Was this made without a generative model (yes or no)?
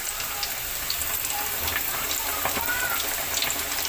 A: yes